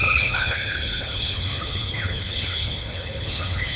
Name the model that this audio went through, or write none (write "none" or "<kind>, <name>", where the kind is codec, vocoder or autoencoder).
codec, HILCodec